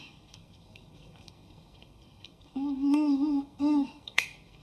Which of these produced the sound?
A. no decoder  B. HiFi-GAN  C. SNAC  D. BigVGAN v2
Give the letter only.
C